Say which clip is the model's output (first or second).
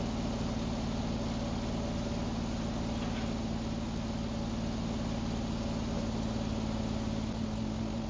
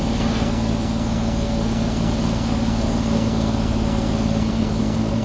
second